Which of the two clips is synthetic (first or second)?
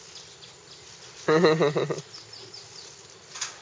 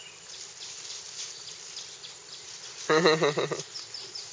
second